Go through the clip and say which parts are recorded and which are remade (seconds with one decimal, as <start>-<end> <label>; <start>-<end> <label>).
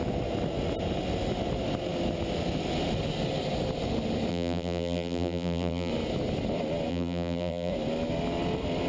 0.0-4.3 recorded; 4.3-5.9 remade; 5.9-6.9 recorded; 6.9-7.7 remade; 7.7-8.9 recorded